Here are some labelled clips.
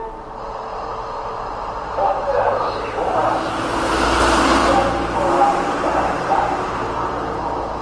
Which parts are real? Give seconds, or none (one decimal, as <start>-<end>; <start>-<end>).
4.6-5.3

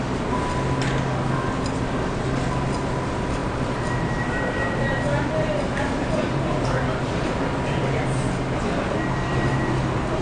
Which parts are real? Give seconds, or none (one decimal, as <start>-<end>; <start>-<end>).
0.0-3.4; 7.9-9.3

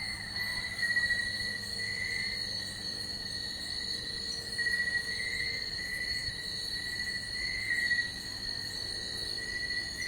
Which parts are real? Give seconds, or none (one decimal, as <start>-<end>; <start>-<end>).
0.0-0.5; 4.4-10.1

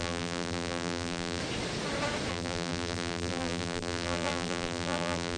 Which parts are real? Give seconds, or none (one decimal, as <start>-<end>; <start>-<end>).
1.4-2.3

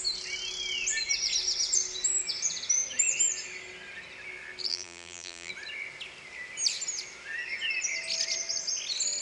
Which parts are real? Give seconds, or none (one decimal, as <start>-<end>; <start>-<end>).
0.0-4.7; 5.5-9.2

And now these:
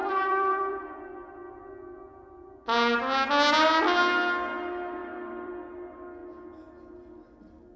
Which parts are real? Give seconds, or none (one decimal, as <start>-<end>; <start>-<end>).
1.0-5.0; 5.5-7.8